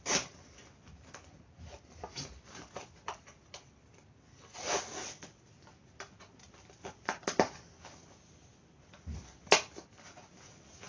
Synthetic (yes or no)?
no